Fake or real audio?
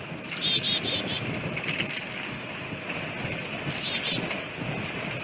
real